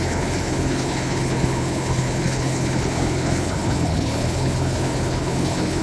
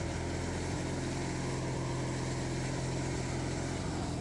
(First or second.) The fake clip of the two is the first